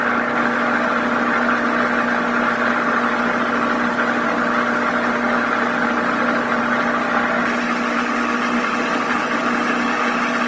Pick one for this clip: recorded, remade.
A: recorded